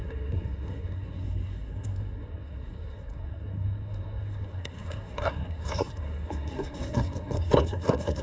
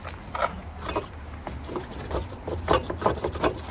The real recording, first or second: second